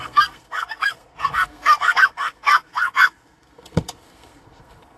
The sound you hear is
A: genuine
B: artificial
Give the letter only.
B